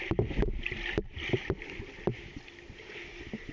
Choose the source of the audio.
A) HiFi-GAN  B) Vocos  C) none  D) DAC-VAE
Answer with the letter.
C